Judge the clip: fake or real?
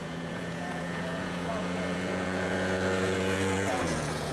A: fake